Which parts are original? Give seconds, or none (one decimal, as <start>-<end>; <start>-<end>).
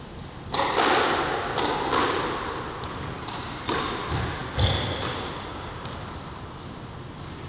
0.0-7.5